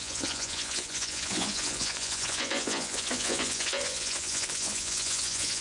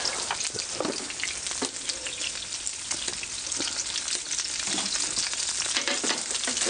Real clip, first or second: second